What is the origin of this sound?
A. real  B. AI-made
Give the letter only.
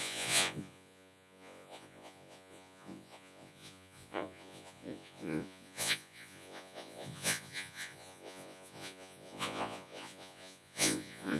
B